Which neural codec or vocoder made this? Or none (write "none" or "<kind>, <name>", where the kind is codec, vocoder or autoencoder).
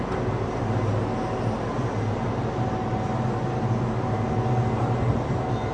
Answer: none